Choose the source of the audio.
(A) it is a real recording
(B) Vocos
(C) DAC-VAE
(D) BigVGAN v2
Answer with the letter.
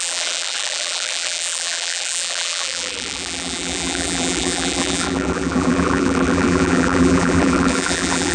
D